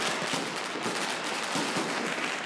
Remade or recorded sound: recorded